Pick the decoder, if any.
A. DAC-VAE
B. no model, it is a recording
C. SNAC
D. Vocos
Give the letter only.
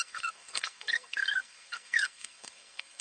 C